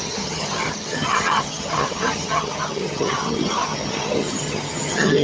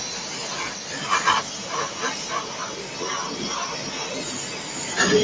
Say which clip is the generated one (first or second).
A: first